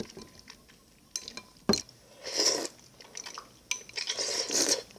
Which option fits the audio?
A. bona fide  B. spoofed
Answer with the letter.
A